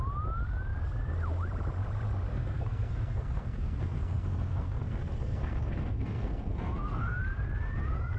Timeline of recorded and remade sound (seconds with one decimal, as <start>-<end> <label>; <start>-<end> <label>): 0.0-2.3 recorded; 2.3-7.2 remade; 7.2-8.2 recorded